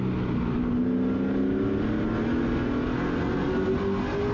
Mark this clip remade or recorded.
recorded